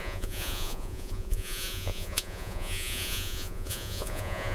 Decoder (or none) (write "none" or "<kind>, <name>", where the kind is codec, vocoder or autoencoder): vocoder, Vocos